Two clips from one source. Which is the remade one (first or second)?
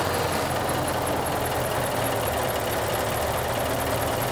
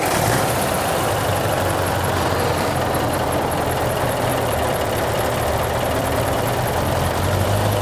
second